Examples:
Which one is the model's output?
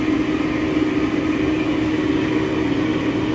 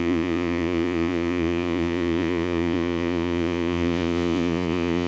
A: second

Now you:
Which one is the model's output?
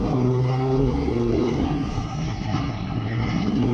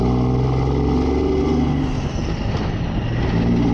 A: first